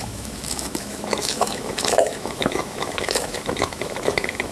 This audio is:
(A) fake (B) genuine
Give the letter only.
A